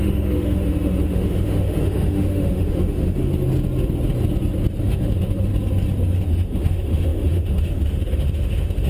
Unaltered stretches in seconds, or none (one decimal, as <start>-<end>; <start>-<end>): 3.3-4.8; 5.5-6.3